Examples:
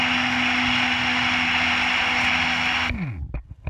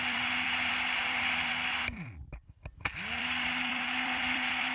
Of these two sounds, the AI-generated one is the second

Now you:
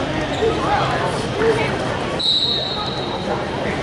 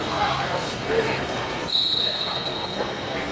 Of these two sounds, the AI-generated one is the second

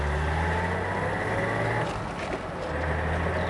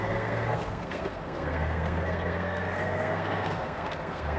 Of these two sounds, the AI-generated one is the second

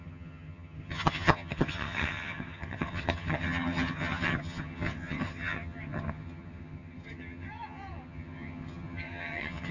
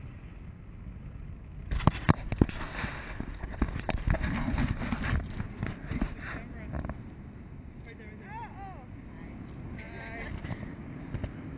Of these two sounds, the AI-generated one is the first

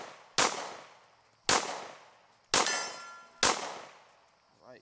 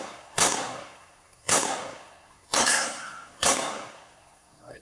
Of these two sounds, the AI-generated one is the second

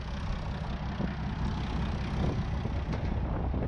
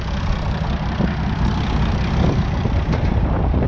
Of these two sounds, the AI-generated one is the second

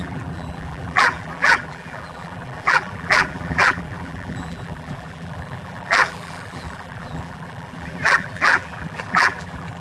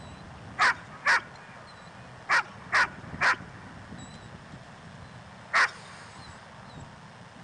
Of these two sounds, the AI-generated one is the first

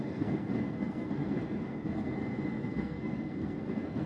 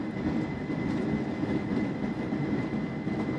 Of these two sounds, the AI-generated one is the first